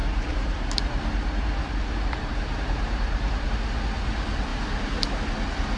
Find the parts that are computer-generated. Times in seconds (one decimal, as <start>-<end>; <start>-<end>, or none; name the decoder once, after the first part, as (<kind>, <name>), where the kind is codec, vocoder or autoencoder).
0.0-3.5 (vocoder, BigVGAN v2); 4.5-5.2